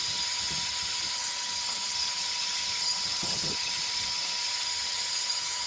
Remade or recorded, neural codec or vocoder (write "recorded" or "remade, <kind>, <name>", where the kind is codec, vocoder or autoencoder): remade, vocoder, HiFi-GAN